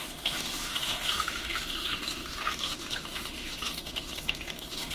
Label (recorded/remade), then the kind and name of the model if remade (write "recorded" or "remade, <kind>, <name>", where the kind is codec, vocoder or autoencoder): remade, autoencoder, DAC-VAE